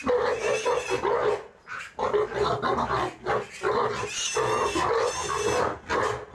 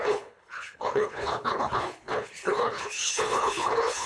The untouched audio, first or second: first